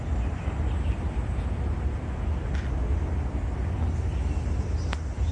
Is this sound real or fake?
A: real